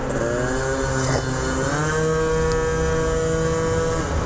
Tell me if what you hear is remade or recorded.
recorded